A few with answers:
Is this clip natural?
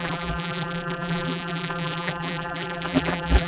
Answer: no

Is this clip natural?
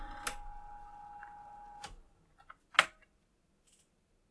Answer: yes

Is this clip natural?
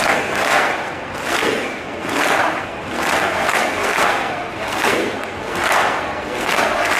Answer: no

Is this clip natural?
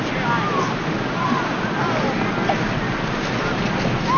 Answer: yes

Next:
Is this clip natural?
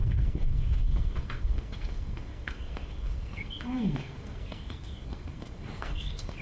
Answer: no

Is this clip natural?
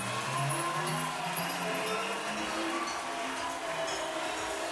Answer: yes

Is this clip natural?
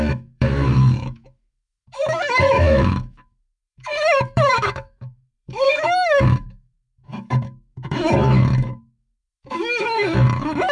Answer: no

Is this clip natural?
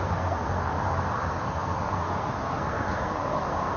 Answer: no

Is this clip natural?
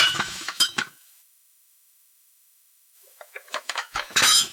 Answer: no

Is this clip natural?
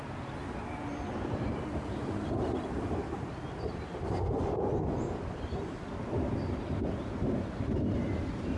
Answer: no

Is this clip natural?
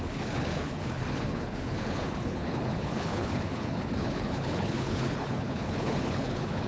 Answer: no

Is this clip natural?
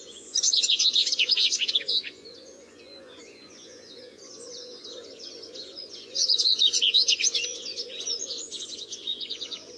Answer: no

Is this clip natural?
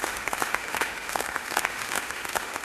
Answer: no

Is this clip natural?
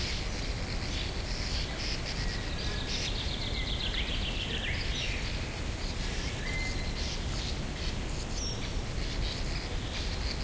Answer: yes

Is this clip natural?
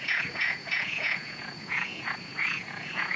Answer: no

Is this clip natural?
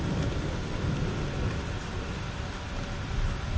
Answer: no